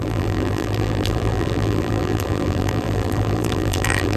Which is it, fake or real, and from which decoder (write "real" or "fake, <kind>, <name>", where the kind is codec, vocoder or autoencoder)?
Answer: fake, vocoder, BigVGAN v2